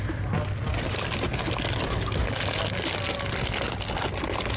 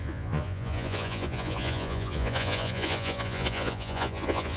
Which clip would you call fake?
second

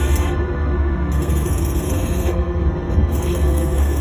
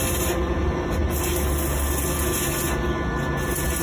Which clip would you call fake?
first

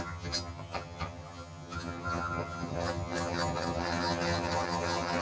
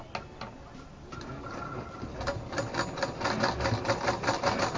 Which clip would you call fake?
first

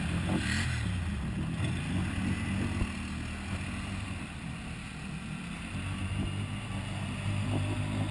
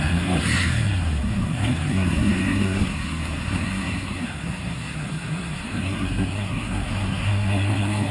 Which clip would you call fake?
second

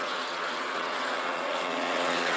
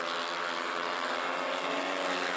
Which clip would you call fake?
first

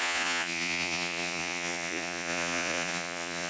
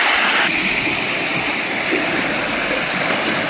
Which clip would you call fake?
first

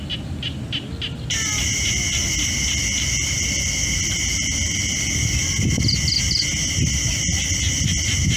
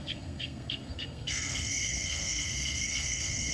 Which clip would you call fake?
second